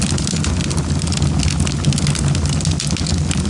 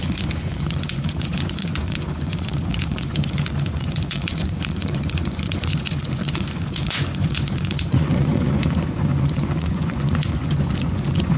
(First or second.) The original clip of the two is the first